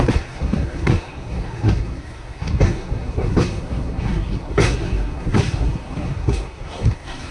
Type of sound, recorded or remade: remade